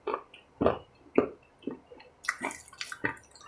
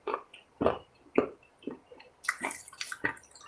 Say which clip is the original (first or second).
first